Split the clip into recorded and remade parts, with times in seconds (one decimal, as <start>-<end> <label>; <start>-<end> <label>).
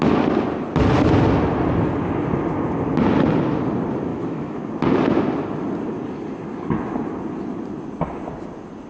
0.0-4.1 recorded; 4.1-4.7 remade; 4.7-8.9 recorded